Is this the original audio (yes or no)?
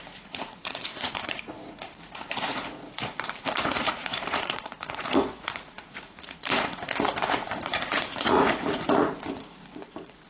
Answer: no